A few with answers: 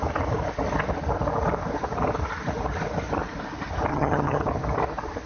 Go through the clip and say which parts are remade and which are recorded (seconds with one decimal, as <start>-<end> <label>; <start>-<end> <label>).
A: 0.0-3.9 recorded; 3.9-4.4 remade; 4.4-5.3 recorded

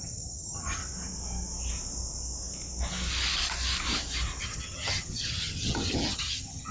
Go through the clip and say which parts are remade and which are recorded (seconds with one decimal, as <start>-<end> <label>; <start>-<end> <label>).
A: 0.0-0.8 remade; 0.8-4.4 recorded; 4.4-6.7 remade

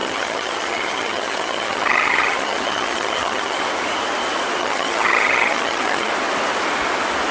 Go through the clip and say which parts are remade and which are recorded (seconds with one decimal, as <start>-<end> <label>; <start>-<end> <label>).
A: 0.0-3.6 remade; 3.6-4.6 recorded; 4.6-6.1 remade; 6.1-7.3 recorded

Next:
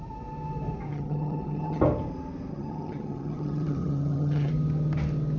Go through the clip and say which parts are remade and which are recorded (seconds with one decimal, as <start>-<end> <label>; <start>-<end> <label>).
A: 0.0-0.9 recorded; 0.9-1.8 remade; 1.8-2.5 recorded; 2.5-4.5 remade; 4.5-5.4 recorded

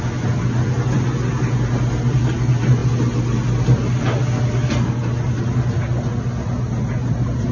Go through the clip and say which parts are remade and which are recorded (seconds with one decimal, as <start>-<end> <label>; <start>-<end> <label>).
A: 0.0-7.5 recorded

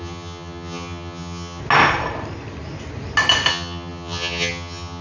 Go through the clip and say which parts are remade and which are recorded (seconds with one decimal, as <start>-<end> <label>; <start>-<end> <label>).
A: 0.0-1.6 remade; 1.6-3.5 recorded; 3.5-5.0 remade